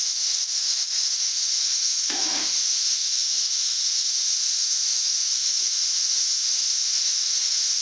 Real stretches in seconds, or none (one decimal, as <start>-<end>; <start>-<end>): none